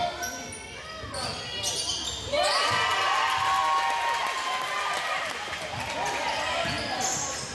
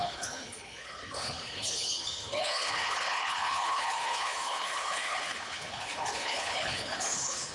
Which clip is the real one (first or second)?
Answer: first